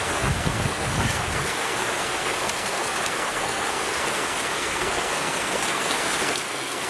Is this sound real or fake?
fake